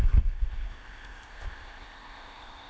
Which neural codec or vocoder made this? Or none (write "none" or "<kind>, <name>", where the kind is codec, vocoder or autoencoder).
codec, ZipCodec